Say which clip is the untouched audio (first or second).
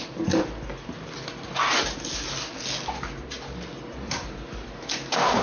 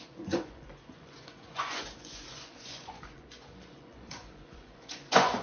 first